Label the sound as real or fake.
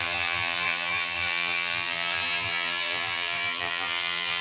fake